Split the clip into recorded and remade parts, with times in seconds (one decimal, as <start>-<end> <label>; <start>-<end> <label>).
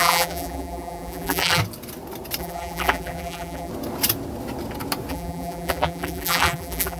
0.0-1.6 remade; 1.6-2.4 recorded; 2.4-3.7 remade; 3.7-5.1 recorded; 5.1-7.0 remade